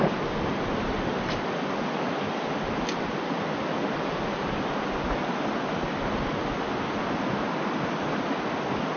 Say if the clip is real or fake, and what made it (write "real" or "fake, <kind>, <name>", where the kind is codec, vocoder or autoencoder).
real